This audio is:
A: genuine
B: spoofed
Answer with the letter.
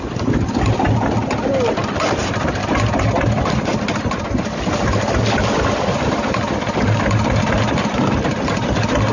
A